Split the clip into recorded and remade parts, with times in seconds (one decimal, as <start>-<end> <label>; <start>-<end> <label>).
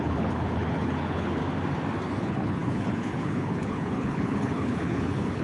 0.0-1.4 remade; 1.4-2.2 recorded; 2.2-5.4 remade